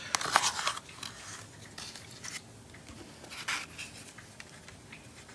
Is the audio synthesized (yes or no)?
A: no